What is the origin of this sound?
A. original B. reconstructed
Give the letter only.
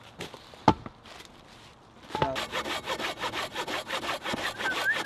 A